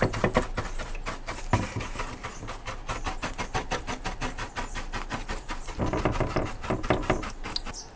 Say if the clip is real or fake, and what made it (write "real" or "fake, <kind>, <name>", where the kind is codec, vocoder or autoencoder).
real